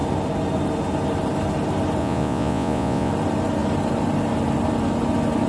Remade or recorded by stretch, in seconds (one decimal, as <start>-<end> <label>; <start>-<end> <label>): 0.0-2.0 recorded; 2.0-3.1 remade; 3.1-5.5 recorded